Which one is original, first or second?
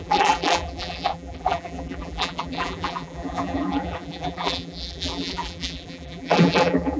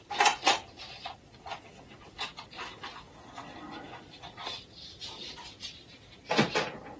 second